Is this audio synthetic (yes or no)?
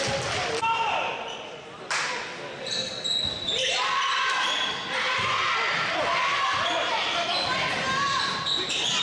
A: no